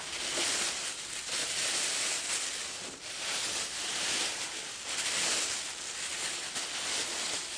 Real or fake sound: real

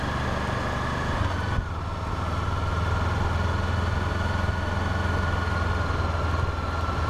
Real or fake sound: real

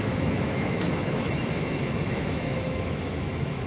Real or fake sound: fake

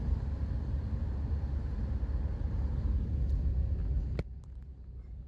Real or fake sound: real